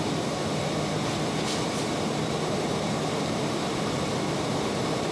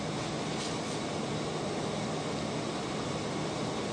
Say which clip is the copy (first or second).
first